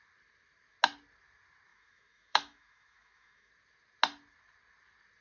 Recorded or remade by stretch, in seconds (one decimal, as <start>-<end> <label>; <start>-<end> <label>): 0.0-1.7 recorded; 1.7-3.5 remade; 3.5-5.2 recorded